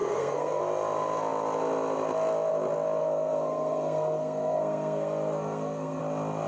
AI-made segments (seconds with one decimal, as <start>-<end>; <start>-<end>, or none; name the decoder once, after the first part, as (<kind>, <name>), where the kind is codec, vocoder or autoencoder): 0.0-0.6 (codec, SNAC); 3.0-6.0